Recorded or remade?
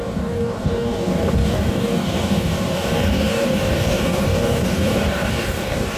remade